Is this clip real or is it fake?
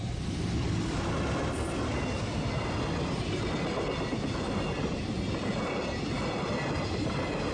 real